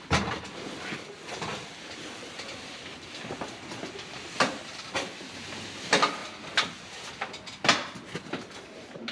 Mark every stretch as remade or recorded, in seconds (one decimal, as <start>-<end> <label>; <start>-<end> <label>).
0.0-9.1 recorded